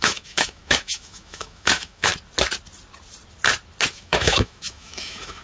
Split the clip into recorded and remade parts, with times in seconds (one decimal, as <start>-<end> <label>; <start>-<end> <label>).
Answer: 0.0-2.1 remade; 2.1-3.9 recorded; 3.9-5.4 remade